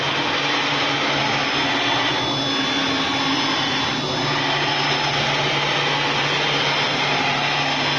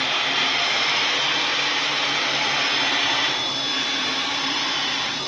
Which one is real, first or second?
first